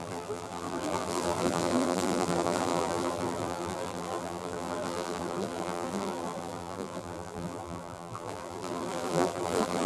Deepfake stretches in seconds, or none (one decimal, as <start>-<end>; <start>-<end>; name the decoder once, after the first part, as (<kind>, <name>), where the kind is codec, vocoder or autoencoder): 0.0-9.9 (vocoder, BigVGAN v2)